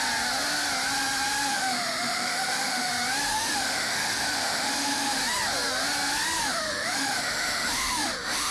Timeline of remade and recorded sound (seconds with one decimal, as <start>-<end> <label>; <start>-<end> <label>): 0.0-1.5 recorded; 1.5-2.9 remade; 2.9-3.3 recorded; 3.3-5.2 remade; 5.2-6.4 recorded; 6.4-8.5 remade